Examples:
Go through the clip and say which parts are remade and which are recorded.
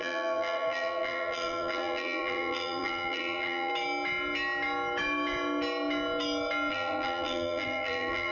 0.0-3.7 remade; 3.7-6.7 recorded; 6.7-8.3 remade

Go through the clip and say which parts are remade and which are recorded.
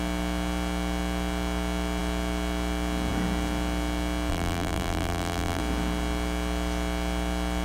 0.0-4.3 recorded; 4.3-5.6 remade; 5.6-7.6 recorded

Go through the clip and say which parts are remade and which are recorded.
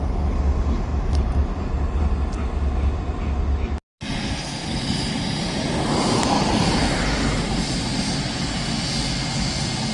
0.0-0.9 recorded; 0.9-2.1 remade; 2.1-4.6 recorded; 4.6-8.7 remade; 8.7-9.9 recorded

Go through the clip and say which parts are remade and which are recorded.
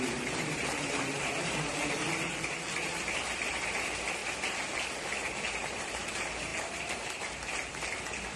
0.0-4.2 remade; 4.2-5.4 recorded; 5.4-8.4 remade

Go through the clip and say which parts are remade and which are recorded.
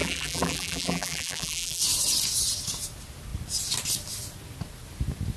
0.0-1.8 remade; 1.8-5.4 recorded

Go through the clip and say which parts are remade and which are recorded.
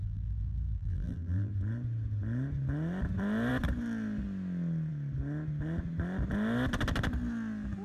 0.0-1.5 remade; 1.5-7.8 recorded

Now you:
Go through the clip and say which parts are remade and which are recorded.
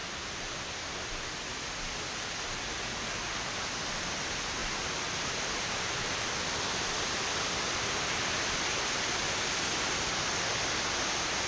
0.0-0.5 remade; 0.5-11.5 recorded